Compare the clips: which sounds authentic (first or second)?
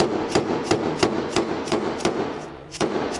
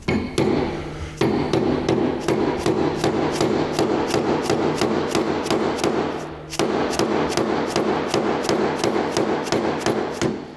second